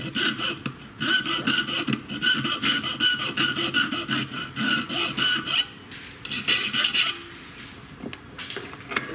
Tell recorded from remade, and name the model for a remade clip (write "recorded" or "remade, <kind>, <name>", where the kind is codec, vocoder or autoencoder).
recorded